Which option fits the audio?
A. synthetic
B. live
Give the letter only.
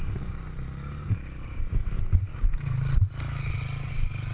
B